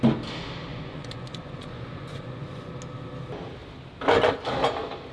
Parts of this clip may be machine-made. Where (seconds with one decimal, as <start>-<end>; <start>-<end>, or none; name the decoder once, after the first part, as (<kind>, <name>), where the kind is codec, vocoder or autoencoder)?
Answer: 0.7-2.7 (vocoder, Vocos)